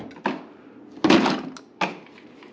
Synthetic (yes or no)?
no